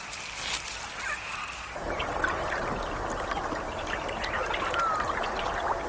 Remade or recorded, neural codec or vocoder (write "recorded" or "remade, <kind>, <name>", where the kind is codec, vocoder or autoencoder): recorded